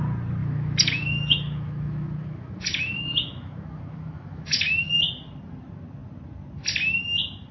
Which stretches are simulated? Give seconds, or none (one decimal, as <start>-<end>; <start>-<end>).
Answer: 0.4-4.9